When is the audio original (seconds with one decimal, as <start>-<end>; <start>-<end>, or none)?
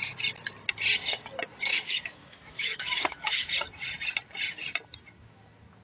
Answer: 0.0-1.7; 3.5-5.8